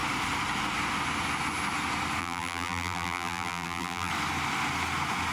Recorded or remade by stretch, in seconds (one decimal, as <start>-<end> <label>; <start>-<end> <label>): 0.0-2.2 recorded; 2.2-4.1 remade; 4.1-5.3 recorded